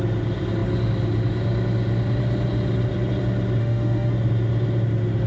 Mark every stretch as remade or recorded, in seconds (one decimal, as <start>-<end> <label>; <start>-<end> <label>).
0.0-3.6 recorded; 3.6-4.1 remade; 4.1-5.3 recorded